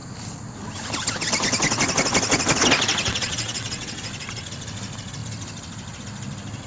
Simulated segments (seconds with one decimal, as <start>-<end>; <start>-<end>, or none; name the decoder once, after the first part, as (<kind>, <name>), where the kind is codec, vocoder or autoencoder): 2.9-4.0 (vocoder, WaveNeXt)